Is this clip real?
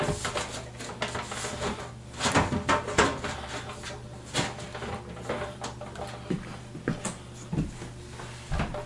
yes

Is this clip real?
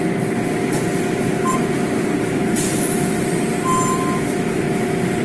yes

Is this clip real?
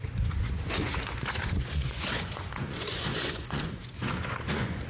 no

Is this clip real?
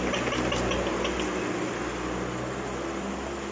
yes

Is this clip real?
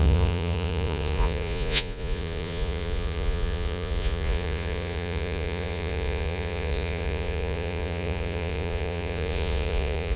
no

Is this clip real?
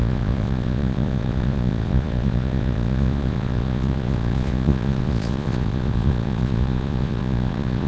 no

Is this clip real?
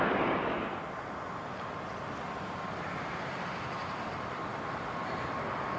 yes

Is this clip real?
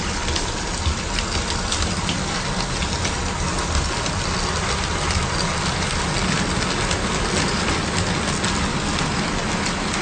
yes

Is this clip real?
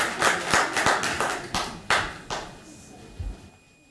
yes